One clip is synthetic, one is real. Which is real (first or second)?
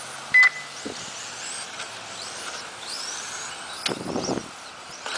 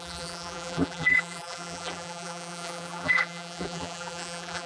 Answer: first